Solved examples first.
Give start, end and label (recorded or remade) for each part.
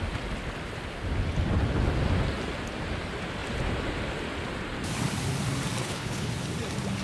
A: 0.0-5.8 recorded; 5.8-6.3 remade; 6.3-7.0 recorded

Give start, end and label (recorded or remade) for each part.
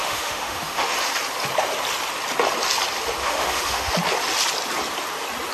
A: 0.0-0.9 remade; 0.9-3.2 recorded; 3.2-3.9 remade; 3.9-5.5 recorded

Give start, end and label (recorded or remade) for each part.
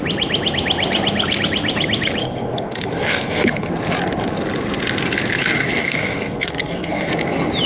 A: 0.0-2.2 recorded; 2.2-3.7 remade; 3.7-5.8 recorded; 5.8-7.1 remade; 7.1-7.7 recorded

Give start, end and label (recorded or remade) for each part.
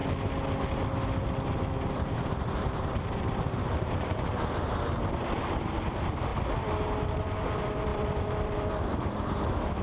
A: 0.0-1.9 recorded; 1.9-6.3 remade; 6.3-6.8 recorded; 6.8-9.8 remade